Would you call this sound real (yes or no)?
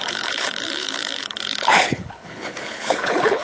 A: no